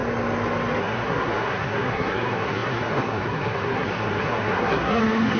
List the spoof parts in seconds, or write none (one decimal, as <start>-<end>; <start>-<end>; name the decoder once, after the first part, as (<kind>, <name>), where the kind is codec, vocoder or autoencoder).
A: 0.8-5.4 (codec, SNAC)

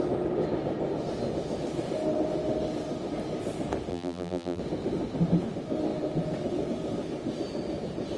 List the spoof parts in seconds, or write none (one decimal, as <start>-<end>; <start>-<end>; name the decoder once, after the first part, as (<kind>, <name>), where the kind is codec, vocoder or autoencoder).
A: 3.9-4.6 (vocoder, BigVGAN v2)

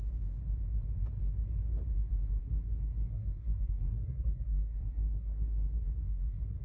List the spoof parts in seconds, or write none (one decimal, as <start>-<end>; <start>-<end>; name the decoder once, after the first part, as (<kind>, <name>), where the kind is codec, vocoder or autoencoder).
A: 2.4-6.6 (codec, SNAC)

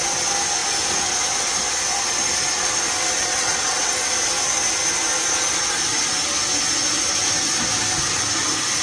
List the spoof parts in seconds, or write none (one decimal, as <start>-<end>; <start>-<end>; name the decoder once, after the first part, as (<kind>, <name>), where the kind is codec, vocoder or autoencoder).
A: 3.2-3.9 (vocoder, WaveNeXt)